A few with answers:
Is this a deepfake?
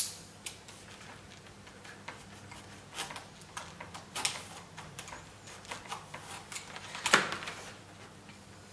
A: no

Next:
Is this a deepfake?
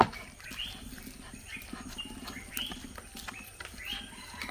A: yes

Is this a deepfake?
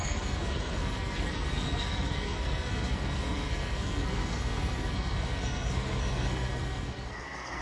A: yes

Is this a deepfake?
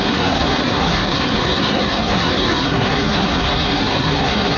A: yes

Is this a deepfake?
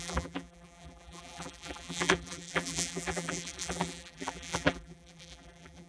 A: yes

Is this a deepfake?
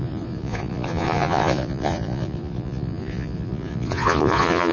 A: yes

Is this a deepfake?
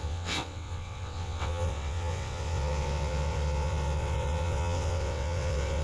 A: yes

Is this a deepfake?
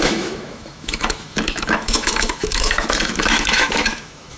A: yes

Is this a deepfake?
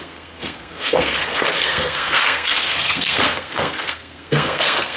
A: yes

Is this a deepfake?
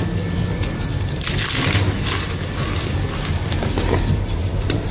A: no